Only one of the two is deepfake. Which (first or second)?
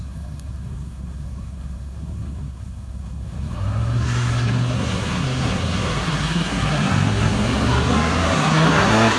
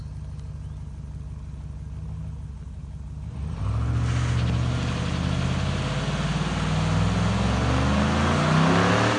first